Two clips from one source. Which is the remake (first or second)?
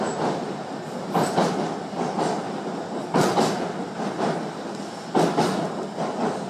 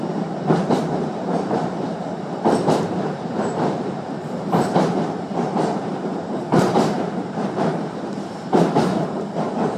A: second